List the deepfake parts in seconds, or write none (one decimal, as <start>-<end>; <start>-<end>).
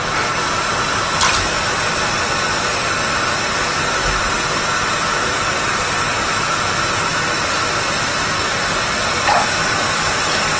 none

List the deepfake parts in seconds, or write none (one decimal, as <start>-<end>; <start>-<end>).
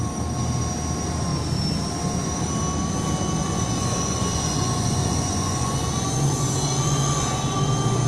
3.4-7.6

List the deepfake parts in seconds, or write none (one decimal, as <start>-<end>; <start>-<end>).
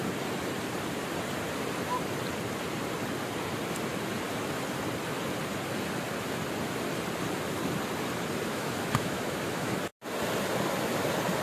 8.5-9.8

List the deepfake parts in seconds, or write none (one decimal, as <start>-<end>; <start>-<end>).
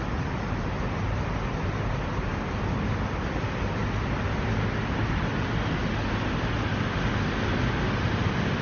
none